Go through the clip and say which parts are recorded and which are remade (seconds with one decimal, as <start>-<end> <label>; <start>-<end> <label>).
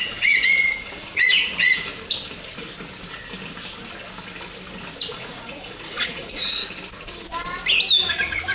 0.0-1.9 remade; 1.9-5.1 recorded; 5.1-6.6 remade; 6.6-8.1 recorded; 8.1-8.5 remade